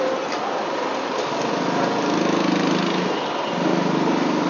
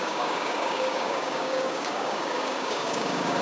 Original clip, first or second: first